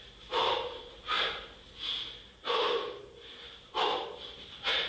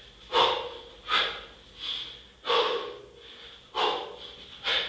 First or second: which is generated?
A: first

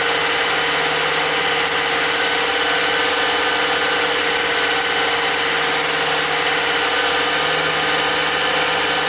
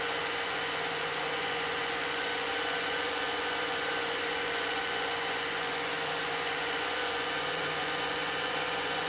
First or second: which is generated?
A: second